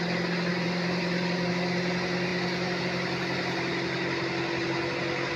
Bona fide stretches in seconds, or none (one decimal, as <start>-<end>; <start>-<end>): 0.0-0.5; 1.5-5.4